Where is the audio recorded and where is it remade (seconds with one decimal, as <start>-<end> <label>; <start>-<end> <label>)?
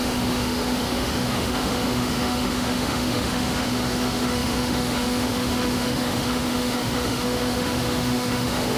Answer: 0.0-8.8 remade